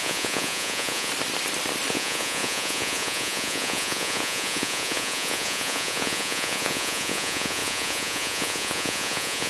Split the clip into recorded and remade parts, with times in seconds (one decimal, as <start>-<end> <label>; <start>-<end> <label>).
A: 0.0-1.1 remade; 1.1-1.9 recorded; 1.9-9.5 remade

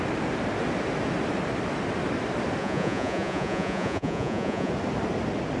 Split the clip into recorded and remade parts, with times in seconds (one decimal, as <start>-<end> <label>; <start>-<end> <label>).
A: 0.0-2.6 recorded; 2.6-4.7 remade; 4.7-5.6 recorded

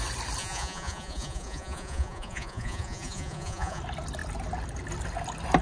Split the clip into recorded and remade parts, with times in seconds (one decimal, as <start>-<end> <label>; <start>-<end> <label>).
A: 0.0-0.4 recorded; 0.4-3.8 remade; 3.8-5.6 recorded

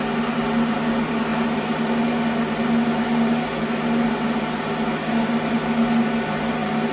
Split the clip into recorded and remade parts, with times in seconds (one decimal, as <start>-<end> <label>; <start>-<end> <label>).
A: 0.0-6.9 recorded